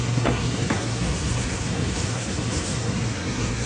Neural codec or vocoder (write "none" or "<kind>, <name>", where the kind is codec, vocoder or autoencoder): codec, SNAC